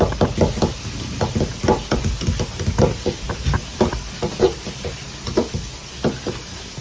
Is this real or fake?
real